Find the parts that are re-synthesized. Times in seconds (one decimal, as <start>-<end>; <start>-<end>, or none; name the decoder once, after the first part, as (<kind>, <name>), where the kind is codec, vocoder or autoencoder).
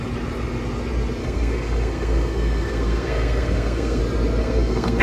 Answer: 1.2-4.0 (codec, SNAC); 4.4-5.0